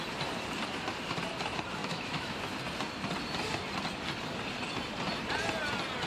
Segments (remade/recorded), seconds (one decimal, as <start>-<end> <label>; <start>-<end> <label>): 0.0-1.8 recorded; 1.8-2.4 remade; 2.4-6.1 recorded